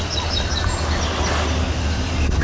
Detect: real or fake real